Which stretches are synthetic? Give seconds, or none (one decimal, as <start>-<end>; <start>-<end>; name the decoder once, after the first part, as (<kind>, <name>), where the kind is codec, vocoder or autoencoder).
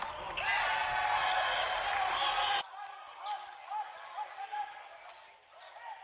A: none